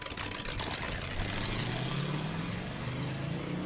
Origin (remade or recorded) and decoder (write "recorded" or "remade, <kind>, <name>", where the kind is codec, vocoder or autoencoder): recorded